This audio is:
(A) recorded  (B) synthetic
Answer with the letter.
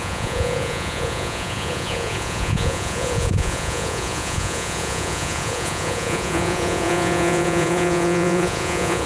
B